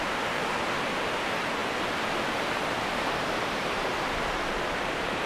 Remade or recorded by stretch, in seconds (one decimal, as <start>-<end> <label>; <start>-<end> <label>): 0.0-0.4 remade; 0.4-1.2 recorded; 1.2-5.3 remade